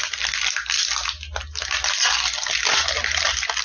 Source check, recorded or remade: recorded